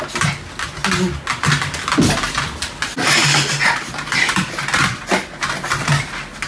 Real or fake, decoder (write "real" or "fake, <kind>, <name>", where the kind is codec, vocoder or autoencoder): real